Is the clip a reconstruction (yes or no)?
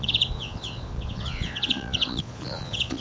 yes